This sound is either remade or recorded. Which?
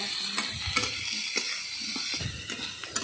recorded